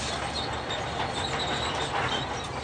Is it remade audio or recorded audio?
recorded